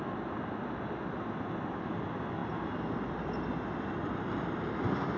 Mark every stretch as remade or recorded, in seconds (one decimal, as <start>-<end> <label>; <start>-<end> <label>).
0.0-5.2 recorded